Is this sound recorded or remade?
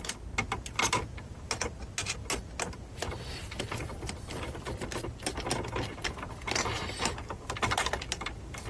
recorded